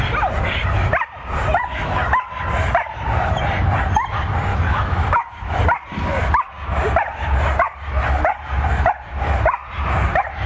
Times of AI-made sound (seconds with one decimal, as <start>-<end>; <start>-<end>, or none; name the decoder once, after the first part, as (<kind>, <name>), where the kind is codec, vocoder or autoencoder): 1.7-2.3 (autoencoder, DAC-VAE); 4.5-5.6